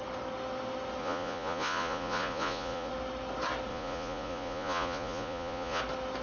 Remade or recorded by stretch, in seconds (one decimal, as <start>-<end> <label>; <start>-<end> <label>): 0.0-1.0 recorded; 1.0-2.9 remade; 2.9-3.7 recorded; 3.7-5.8 remade; 5.8-6.2 recorded